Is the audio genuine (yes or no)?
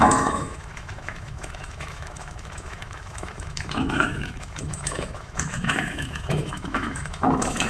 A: no